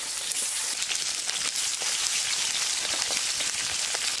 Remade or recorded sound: recorded